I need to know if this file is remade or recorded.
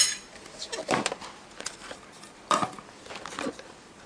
recorded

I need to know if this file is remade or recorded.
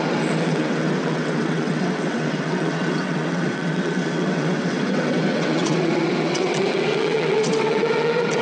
remade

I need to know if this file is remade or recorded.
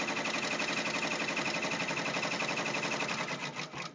recorded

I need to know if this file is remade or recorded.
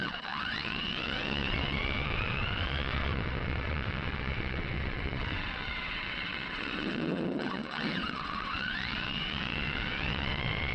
remade